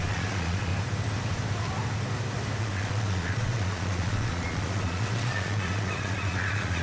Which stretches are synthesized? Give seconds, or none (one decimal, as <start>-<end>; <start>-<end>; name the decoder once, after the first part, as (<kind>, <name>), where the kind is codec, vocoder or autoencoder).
0.0-0.7 (vocoder, Vocos); 2.6-6.8